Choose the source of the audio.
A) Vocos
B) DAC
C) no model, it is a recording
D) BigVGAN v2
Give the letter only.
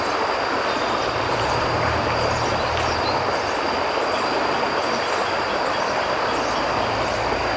C